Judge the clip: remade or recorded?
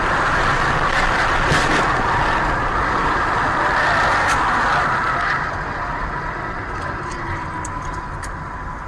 recorded